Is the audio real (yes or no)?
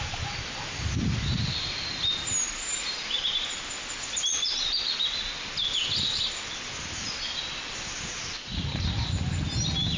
yes